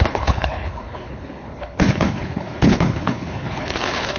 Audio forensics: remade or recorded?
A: remade